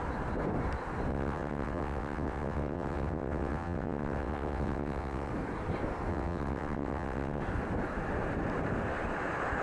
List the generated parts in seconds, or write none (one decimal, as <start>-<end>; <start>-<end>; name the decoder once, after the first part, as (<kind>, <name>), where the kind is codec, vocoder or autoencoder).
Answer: 1.1-5.3 (vocoder, WaveNeXt); 6.1-7.4

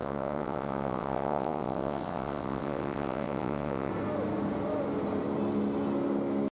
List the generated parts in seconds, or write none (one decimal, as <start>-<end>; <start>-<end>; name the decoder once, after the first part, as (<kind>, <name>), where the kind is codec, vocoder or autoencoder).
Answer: 0.0-3.9 (vocoder, WaveNeXt)

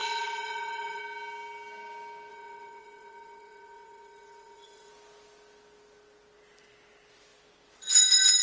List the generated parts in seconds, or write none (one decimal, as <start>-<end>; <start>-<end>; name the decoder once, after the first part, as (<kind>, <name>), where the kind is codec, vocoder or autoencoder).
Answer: 0.0-1.0 (vocoder, WaveNeXt); 2.3-4.9

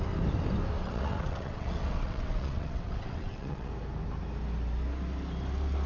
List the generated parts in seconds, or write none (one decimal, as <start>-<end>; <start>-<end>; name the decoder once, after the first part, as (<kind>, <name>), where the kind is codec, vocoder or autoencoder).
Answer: 0.8-3.7 (vocoder, WaveNeXt)